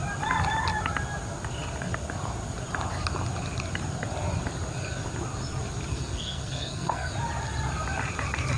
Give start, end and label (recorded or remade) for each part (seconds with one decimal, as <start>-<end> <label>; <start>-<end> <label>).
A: 0.0-5.9 recorded; 5.9-7.1 remade; 7.1-8.6 recorded